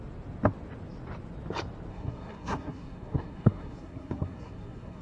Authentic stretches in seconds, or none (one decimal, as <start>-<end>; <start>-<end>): 0.0-1.9